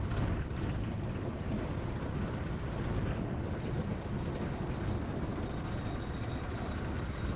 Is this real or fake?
real